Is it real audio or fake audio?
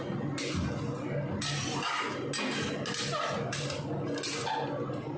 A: real